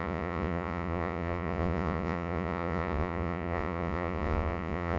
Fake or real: fake